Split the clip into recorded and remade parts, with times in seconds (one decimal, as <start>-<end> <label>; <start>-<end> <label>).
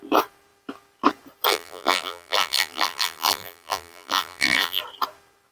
0.0-1.5 recorded; 1.5-4.8 remade; 4.8-5.5 recorded